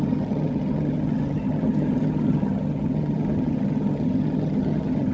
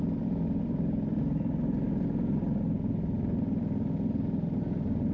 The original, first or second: second